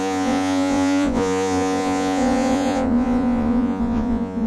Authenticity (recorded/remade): remade